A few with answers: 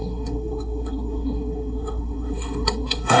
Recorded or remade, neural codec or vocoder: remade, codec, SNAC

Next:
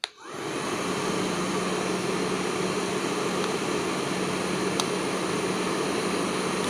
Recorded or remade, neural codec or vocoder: recorded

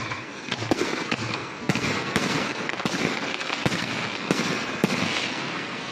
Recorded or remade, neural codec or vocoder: remade, codec, SNAC